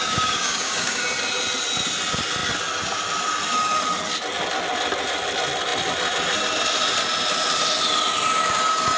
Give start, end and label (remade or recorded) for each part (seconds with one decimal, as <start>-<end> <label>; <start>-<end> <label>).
0.0-1.0 remade; 1.0-9.0 recorded